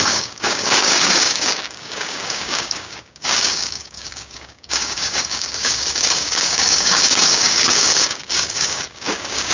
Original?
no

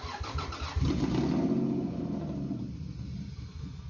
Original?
yes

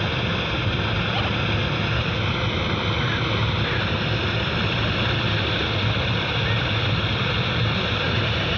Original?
yes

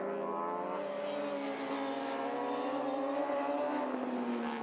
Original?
yes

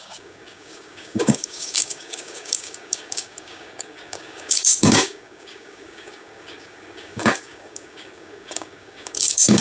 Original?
no